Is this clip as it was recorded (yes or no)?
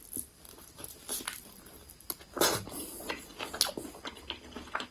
yes